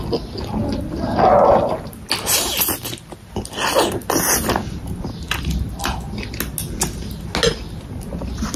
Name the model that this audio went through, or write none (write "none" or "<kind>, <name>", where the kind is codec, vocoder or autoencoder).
none